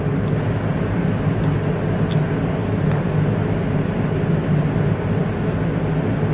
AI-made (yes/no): no